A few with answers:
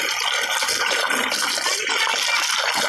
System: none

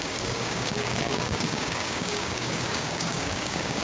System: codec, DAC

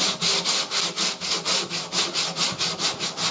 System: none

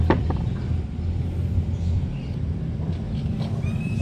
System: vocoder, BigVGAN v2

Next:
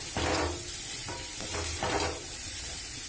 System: none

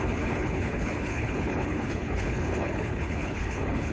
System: codec, HILCodec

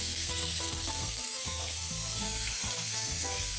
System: codec, SNAC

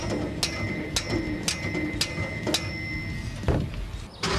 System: none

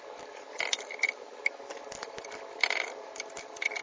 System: none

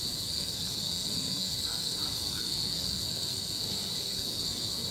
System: codec, SNAC